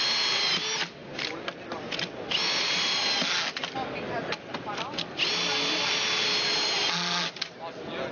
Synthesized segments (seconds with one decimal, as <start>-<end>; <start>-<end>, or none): none